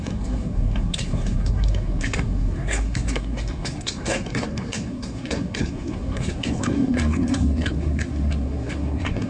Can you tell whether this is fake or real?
fake